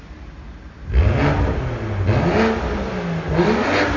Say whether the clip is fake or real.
real